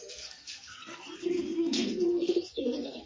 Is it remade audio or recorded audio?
remade